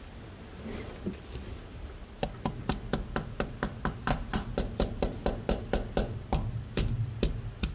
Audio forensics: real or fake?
real